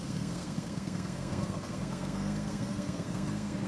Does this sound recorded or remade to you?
remade